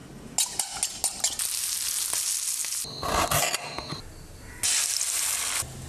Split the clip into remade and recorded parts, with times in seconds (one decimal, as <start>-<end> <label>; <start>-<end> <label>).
0.0-5.9 recorded